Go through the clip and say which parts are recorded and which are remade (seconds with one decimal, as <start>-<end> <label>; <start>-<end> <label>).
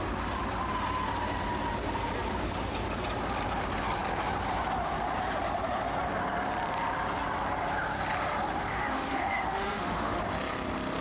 0.0-8.7 recorded; 8.7-10.2 remade; 10.2-11.0 recorded